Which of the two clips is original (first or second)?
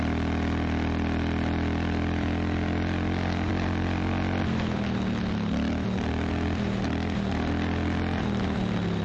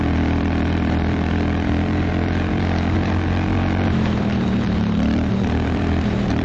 first